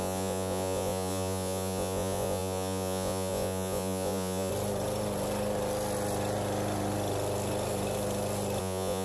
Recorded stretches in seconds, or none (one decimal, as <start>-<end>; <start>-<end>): 4.5-8.6